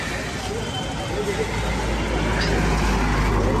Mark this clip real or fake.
real